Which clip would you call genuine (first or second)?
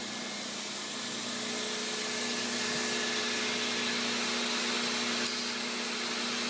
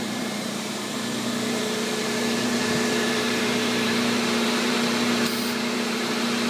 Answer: first